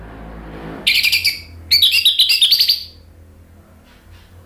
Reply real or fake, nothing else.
real